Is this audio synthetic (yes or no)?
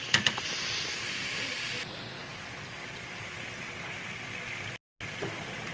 no